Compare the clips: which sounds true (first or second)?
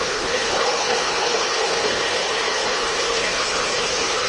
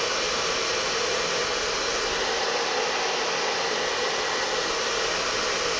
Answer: second